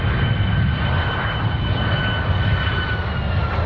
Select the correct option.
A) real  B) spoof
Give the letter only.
A